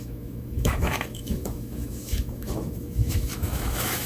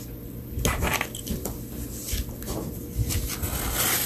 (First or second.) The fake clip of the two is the first